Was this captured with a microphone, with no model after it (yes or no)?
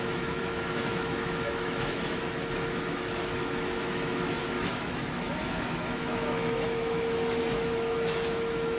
no